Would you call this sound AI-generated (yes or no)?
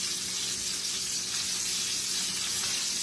no